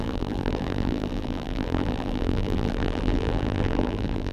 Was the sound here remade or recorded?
remade